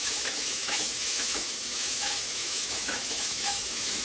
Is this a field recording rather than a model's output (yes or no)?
no